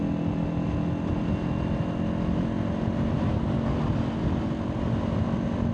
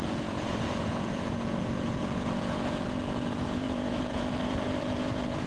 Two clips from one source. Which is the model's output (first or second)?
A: second